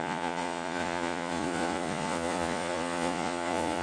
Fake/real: fake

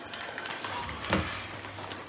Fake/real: real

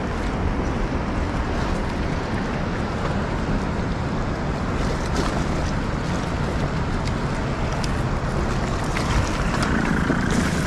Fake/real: real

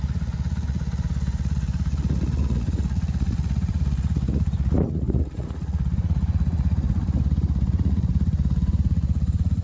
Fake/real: fake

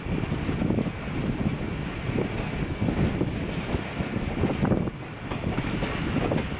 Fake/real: real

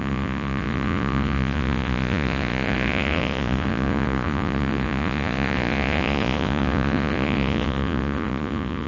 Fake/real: fake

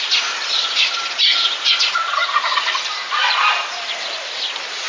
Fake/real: real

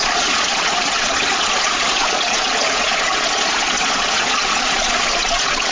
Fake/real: fake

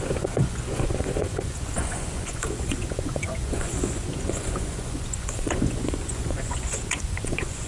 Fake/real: fake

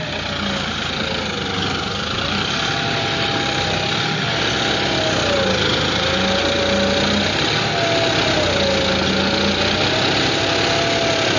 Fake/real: real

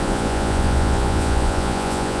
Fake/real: fake